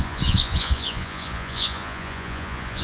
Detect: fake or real fake